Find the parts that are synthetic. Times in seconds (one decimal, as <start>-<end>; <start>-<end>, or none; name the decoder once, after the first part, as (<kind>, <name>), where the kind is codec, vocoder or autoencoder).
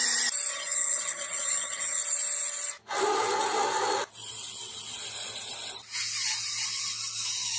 0.5-2.0 (vocoder, HiFi-GAN)